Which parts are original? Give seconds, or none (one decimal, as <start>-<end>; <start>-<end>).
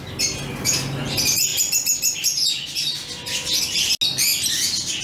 0.0-5.0